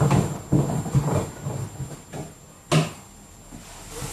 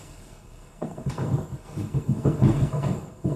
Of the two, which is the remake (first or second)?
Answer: second